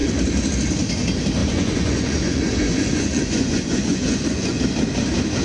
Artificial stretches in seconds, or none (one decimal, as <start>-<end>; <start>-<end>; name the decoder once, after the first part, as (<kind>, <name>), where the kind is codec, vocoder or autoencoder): 1.4-4.6 (vocoder, Vocos)